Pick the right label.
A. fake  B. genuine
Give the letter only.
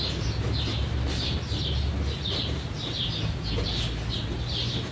B